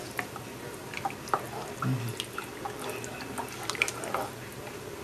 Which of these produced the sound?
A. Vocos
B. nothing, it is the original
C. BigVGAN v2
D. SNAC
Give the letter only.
B